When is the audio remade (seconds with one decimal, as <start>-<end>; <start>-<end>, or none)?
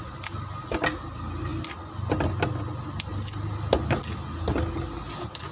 none